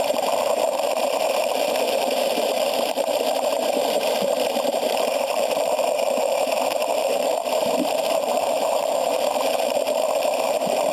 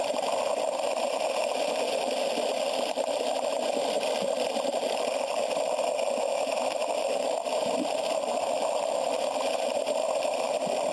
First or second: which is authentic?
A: second